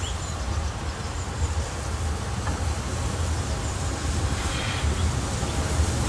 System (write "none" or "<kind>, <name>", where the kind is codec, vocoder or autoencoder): vocoder, BigVGAN v2